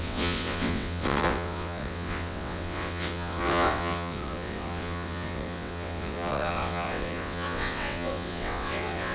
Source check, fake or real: fake